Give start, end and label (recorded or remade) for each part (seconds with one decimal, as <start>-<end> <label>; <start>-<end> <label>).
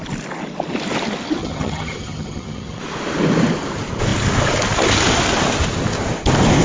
0.0-1.4 recorded; 1.4-2.8 remade; 2.8-6.6 recorded